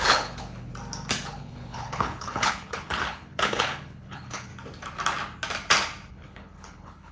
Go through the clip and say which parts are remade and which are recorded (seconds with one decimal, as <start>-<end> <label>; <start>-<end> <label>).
0.0-0.7 remade; 0.7-1.3 recorded; 1.3-4.5 remade; 4.5-6.1 recorded; 6.1-7.1 remade